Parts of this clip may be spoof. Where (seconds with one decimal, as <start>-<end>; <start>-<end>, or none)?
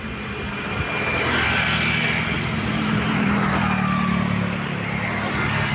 2.6-3.6